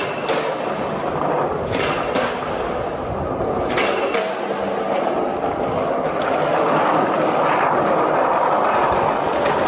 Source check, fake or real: real